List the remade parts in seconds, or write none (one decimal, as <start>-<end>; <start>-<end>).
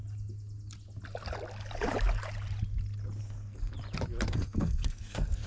3.2-3.7; 4.3-5.5